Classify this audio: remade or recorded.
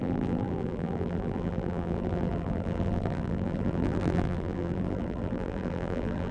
remade